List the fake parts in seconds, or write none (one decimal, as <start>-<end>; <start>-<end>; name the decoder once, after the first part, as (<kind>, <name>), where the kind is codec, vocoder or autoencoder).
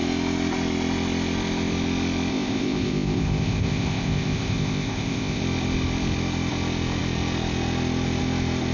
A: 2.3-5.4 (codec, ZipCodec)